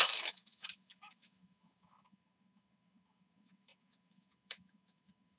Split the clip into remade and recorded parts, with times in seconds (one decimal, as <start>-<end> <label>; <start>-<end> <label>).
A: 0.0-5.4 remade